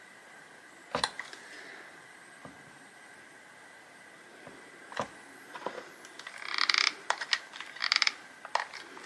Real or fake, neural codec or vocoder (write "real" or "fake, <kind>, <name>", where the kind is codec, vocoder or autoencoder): real